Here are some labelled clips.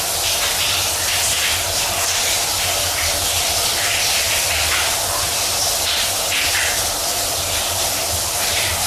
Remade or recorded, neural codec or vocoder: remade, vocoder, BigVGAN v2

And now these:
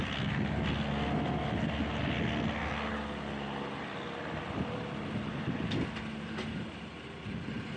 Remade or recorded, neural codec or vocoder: recorded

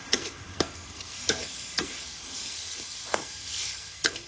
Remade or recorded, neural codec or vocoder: remade, codec, SNAC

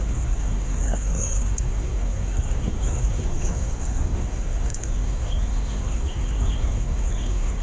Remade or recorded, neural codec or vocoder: remade, codec, SNAC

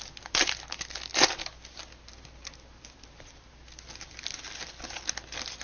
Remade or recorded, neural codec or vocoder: recorded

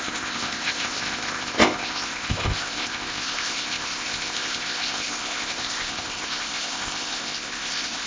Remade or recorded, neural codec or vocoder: remade, codec, ZipCodec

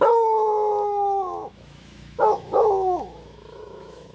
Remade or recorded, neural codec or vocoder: remade, autoencoder, DAC-VAE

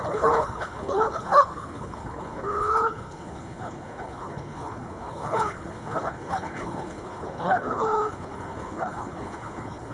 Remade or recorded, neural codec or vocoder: remade, codec, HILCodec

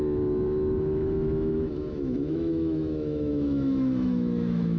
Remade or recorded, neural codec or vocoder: remade, autoencoder, DAC-VAE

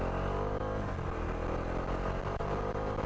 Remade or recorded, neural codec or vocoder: recorded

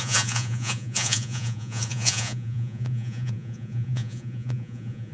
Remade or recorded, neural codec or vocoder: remade, vocoder, Vocos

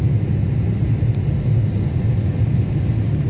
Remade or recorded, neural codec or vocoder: recorded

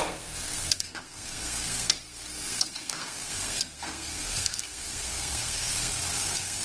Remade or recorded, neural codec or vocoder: remade, codec, SNAC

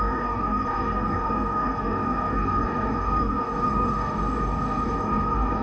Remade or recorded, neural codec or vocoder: remade, codec, DAC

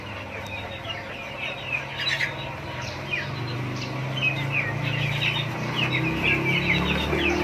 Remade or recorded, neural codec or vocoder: recorded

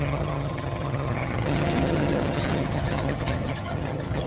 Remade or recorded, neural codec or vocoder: remade, vocoder, HiFi-GAN